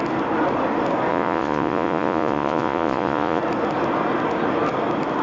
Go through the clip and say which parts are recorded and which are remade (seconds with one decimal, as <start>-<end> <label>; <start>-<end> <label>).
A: 0.0-1.1 recorded; 1.1-3.4 remade; 3.4-5.2 recorded